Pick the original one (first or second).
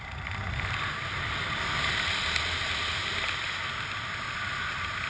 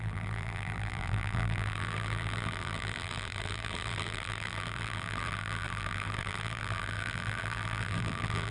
first